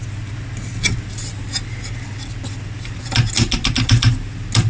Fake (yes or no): no